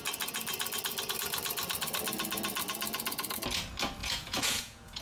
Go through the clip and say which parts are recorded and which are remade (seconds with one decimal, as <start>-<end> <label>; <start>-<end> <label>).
0.0-4.0 recorded; 4.0-5.0 remade